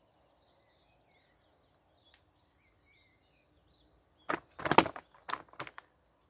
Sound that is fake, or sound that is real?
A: real